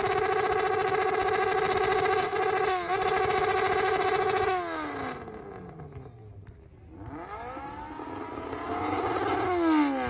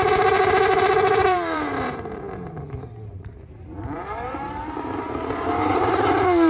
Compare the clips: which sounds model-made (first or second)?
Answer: second